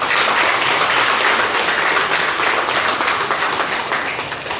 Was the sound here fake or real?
real